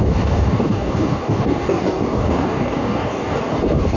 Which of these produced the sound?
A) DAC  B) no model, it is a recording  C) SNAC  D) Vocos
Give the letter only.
A